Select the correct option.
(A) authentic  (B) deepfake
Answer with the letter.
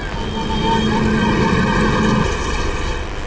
A